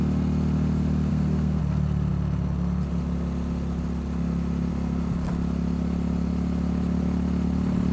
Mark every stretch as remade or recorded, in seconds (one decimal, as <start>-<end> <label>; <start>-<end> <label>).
0.0-1.1 recorded; 1.1-1.6 remade; 1.6-7.9 recorded